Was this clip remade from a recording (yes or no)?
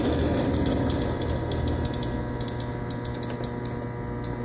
no